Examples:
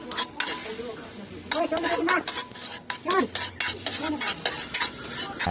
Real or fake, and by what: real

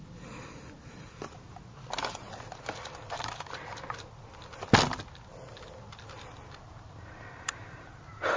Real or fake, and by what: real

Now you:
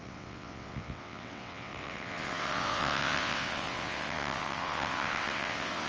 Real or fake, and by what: fake, vocoder, WaveNeXt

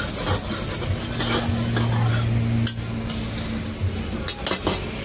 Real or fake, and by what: real